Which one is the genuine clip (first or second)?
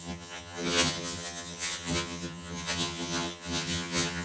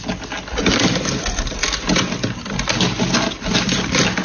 second